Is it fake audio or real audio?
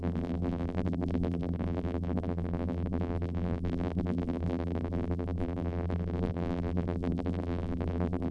fake